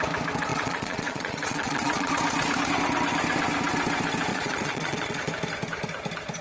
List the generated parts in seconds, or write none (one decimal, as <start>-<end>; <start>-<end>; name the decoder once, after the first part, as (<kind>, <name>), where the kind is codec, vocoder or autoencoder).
0.5-2.1 (vocoder, Vocos); 4.3-5.3